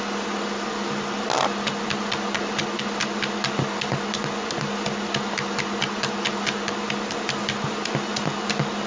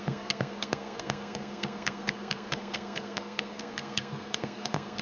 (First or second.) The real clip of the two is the first